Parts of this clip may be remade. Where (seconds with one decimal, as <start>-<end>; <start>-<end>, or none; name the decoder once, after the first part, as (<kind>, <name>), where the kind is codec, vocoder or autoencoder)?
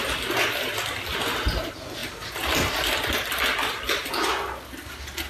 none